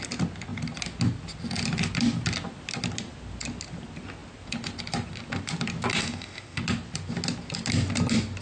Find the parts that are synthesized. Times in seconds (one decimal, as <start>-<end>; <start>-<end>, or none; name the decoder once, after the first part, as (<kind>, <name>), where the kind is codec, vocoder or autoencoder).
6.0-6.6 (autoencoder, DAC-VAE)